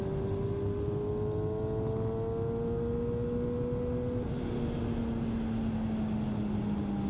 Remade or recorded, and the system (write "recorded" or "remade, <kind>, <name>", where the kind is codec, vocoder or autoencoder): recorded